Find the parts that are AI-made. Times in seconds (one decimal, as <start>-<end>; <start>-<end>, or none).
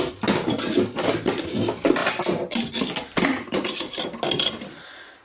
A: 3.3-3.9